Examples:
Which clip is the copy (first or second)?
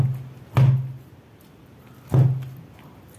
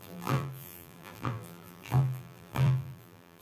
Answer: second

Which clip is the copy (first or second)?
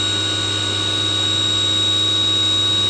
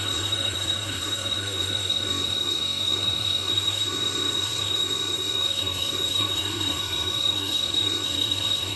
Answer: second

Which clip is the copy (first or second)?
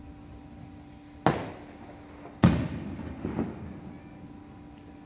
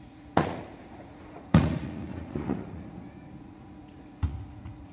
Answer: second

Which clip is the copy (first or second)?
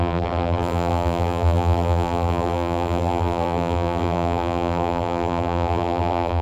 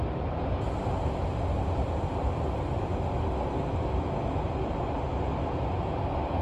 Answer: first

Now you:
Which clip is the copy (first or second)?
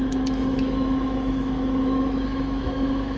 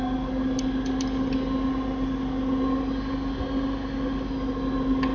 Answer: first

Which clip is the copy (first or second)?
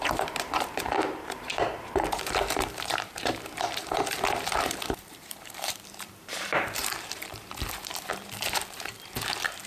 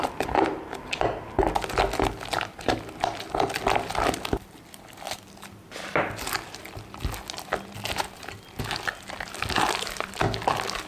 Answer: first